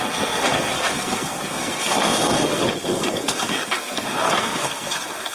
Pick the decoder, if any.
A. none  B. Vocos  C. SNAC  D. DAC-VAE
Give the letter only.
C